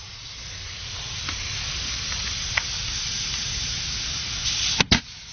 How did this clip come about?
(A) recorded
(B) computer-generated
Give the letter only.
A